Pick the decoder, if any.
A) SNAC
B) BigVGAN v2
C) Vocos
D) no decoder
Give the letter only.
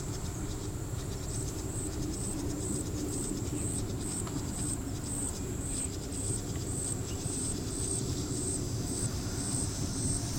B